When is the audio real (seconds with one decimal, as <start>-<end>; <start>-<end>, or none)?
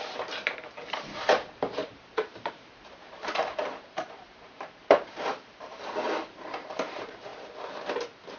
7.3-8.4